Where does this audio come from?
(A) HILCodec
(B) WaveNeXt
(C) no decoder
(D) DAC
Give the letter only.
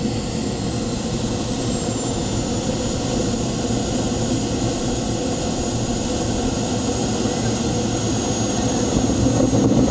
C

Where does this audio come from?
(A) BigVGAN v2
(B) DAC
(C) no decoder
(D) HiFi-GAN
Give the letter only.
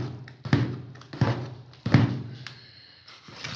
C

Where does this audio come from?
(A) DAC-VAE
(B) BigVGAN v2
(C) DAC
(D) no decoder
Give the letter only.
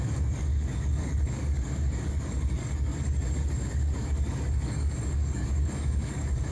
C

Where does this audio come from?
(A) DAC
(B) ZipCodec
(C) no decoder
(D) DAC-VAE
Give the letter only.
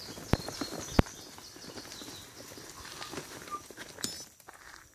C